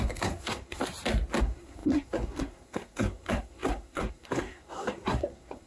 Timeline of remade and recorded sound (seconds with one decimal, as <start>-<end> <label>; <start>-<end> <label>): 0.0-0.8 remade; 0.8-1.4 recorded; 1.4-5.7 remade